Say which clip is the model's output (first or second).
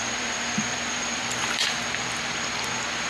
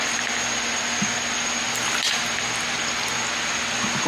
first